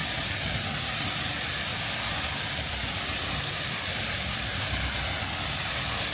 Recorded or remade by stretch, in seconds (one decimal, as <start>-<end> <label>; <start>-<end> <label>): 0.0-1.1 remade; 1.1-1.7 recorded; 1.7-4.5 remade; 4.5-6.1 recorded